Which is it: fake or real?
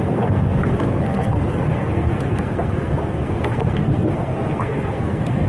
fake